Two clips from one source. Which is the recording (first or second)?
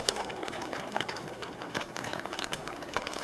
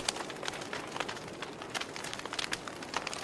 second